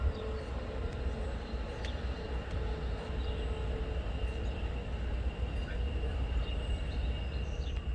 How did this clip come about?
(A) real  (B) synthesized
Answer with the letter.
A